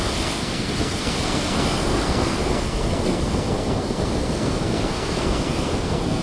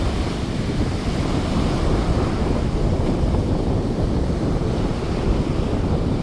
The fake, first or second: first